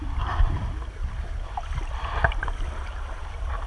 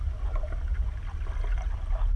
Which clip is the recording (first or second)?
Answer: second